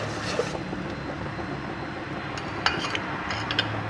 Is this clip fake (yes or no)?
no